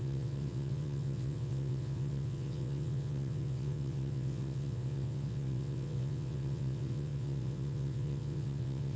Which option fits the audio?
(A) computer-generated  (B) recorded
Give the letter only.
A